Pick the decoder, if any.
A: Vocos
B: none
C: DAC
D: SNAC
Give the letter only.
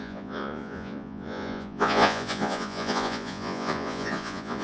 A